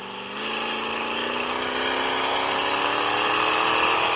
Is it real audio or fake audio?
real